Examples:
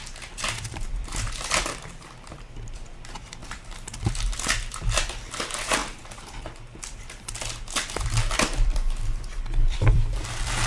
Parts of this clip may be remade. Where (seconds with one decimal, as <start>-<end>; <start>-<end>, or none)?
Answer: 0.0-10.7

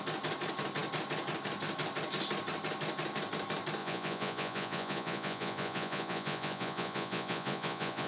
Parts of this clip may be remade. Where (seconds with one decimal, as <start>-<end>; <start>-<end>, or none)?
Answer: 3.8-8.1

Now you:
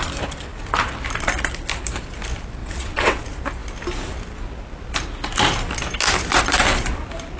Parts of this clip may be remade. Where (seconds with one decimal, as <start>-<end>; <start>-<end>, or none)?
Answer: 2.6-3.2

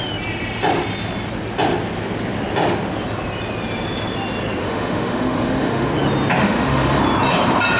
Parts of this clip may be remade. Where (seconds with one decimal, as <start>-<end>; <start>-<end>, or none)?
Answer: 4.6-5.9; 6.4-7.0